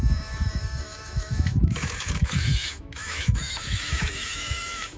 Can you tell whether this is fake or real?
fake